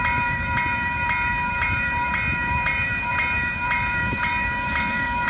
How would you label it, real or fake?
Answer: fake